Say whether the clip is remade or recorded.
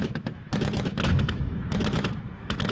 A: remade